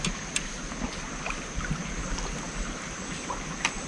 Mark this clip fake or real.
real